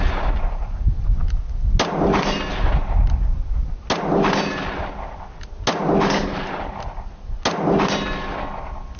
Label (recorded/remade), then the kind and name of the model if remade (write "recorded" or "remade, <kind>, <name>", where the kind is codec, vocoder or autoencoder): recorded